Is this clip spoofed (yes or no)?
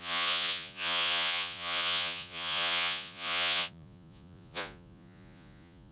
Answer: yes